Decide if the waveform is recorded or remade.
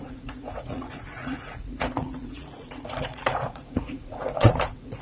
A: remade